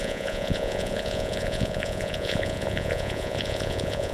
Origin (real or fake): fake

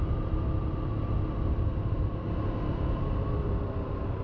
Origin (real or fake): real